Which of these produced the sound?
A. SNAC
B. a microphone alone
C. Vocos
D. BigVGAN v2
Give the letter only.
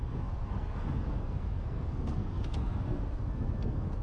A